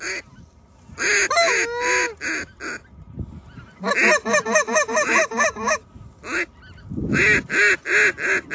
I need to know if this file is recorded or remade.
recorded